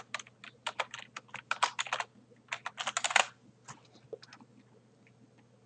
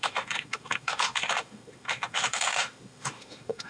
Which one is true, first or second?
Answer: first